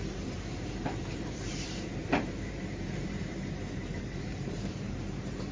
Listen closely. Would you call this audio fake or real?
fake